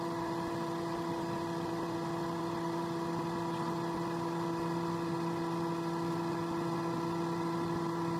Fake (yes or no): no